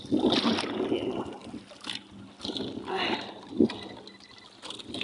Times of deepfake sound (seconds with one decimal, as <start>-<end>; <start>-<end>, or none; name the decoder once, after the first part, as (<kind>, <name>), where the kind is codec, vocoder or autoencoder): 1.4-2.6 (vocoder, BigVGAN v2)